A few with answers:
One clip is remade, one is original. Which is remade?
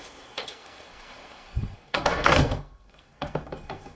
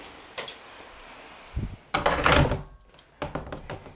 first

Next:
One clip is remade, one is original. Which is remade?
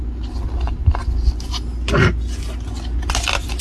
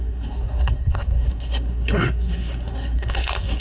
second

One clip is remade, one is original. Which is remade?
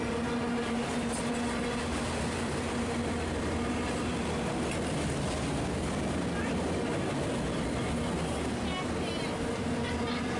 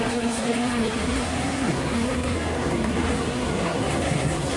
second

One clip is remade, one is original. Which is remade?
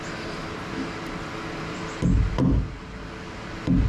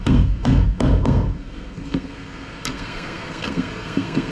second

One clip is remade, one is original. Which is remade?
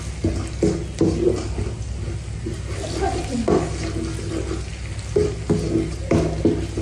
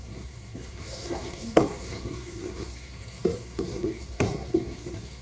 second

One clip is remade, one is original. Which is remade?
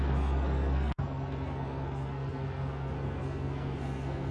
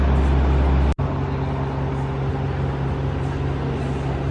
first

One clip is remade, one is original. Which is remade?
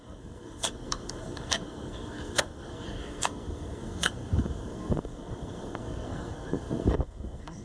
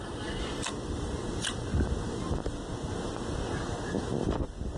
first